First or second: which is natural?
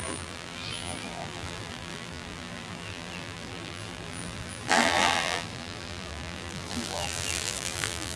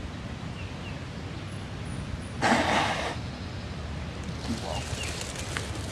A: second